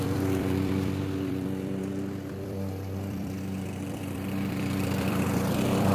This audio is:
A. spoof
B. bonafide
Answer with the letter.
A